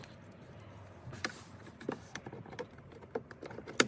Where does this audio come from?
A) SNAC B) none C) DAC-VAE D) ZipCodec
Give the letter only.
B